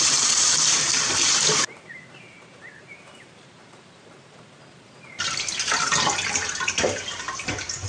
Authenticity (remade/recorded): remade